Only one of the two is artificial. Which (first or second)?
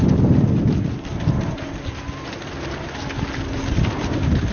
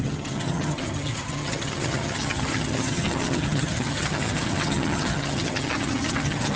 second